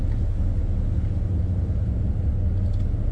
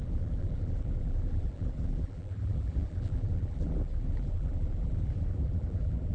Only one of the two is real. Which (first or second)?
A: first